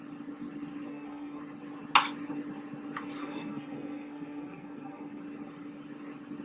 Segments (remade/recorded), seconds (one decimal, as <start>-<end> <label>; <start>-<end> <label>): 0.0-0.9 recorded; 0.9-1.4 remade; 1.4-3.2 recorded; 3.2-5.2 remade; 5.2-6.4 recorded